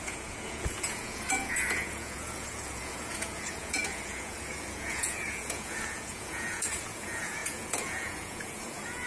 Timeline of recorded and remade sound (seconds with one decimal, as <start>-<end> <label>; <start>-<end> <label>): 0.0-9.1 remade